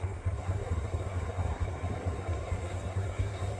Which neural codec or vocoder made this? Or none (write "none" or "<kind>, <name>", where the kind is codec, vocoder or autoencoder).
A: codec, SNAC